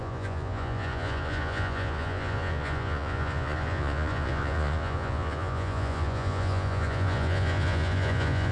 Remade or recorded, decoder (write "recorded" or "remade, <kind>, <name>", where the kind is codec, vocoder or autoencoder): remade, vocoder, Vocos